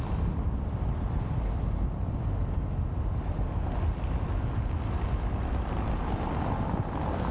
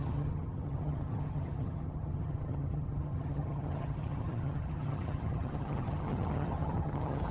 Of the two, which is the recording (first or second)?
first